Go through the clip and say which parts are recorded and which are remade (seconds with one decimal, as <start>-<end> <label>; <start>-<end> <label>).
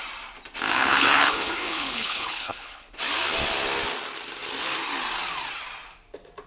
0.0-0.7 recorded; 0.7-3.0 remade; 3.0-6.5 recorded